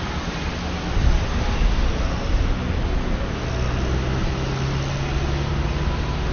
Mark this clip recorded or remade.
recorded